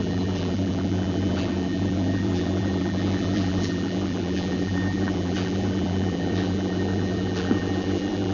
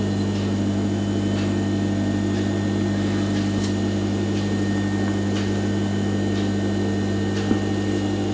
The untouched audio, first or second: second